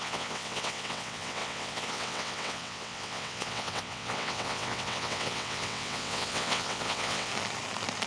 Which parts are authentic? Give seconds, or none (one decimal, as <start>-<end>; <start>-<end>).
7.3-8.1